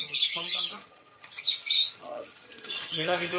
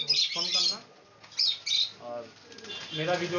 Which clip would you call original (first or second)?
second